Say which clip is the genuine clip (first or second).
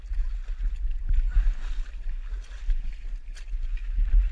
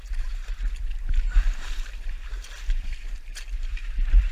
first